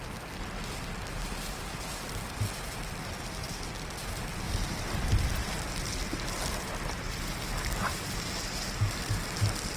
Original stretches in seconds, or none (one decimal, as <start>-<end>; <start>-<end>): 0.0-9.8